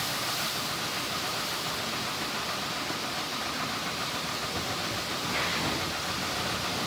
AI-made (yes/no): no